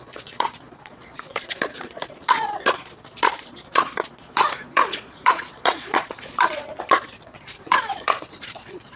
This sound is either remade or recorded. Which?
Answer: remade